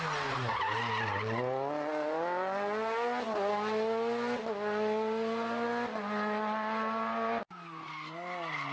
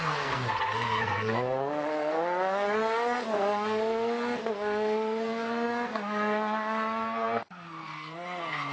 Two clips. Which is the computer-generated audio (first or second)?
second